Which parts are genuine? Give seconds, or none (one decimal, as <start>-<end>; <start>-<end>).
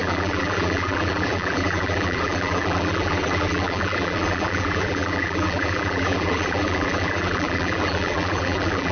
none